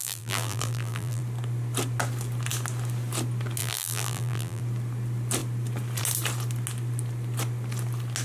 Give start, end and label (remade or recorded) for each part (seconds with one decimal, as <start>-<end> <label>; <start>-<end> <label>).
0.0-1.2 remade; 1.2-3.6 recorded; 3.6-4.6 remade; 4.6-8.2 recorded